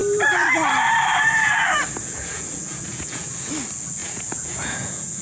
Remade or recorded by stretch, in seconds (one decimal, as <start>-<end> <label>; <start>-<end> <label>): 0.0-2.0 recorded; 2.0-3.5 remade; 3.5-4.0 recorded; 4.0-5.2 remade